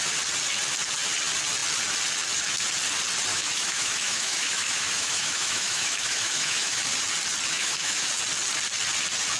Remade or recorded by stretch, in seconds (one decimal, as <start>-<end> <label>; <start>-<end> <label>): 0.0-3.3 recorded; 3.3-6.8 remade; 6.8-7.5 recorded; 7.5-8.1 remade; 8.1-9.4 recorded